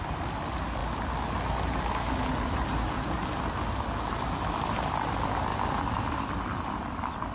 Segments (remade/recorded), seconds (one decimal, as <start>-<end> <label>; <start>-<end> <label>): 0.0-0.8 remade; 0.8-2.5 recorded; 2.5-5.5 remade; 5.5-6.3 recorded; 6.3-7.3 remade